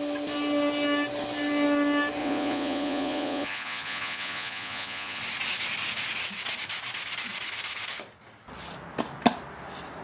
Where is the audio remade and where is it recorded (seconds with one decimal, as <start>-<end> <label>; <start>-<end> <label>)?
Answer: 0.0-2.2 recorded; 2.2-5.2 remade; 5.2-10.0 recorded